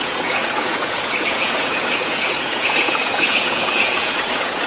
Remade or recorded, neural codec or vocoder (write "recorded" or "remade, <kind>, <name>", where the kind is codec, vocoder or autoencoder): remade, vocoder, Vocos